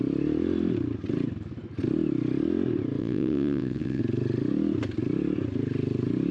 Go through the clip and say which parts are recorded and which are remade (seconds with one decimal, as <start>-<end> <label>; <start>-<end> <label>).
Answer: 0.0-3.0 recorded; 3.0-4.0 remade; 4.0-6.3 recorded